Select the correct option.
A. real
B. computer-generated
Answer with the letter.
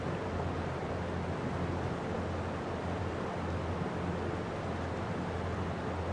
A